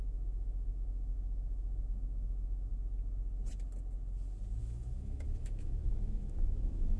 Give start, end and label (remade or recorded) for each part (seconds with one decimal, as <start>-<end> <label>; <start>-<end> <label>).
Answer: 0.0-2.7 remade; 2.7-4.6 recorded; 4.6-7.0 remade